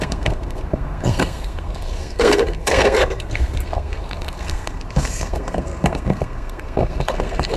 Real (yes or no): no